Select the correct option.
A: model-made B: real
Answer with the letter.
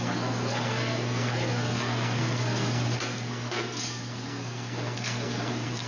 A